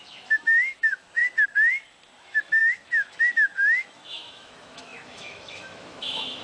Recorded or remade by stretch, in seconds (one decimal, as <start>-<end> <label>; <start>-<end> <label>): 0.0-1.2 remade; 1.2-2.2 recorded; 2.2-6.4 remade